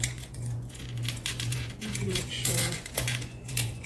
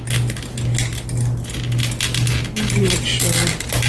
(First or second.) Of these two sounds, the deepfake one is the first